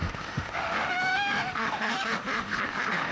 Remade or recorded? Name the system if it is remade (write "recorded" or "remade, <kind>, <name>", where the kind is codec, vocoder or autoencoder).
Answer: remade, autoencoder, DAC-VAE